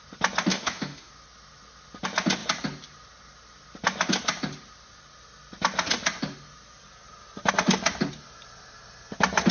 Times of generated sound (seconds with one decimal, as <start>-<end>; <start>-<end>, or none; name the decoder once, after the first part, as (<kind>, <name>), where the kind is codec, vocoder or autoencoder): 0.5-1.1 (autoencoder, DAC-VAE)